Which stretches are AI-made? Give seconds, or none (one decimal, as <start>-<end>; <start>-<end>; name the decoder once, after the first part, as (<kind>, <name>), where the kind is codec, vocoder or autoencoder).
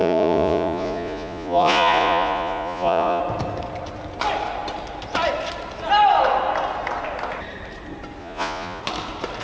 0.0-3.2 (vocoder, Vocos); 8.2-8.8